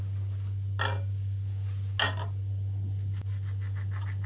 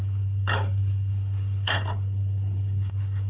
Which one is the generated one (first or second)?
second